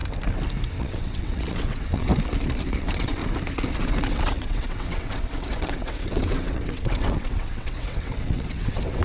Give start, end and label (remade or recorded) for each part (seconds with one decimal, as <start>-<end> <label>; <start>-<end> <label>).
0.0-0.8 recorded; 0.8-2.1 remade; 2.1-2.7 recorded; 2.7-3.2 remade; 3.2-3.8 recorded; 3.8-9.0 remade